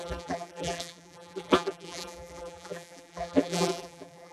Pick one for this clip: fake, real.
fake